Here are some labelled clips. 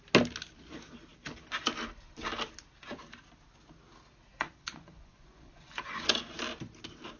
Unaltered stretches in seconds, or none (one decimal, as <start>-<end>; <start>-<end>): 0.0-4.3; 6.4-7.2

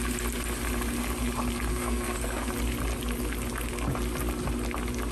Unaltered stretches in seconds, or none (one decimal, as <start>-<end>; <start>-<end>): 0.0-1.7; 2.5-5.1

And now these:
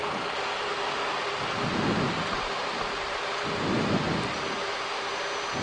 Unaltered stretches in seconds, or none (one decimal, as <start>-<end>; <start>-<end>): 0.0-5.6